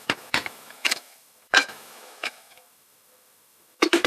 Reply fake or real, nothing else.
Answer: fake